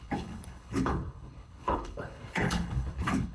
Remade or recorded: remade